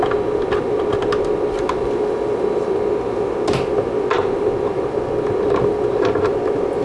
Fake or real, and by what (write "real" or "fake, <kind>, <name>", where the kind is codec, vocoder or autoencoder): real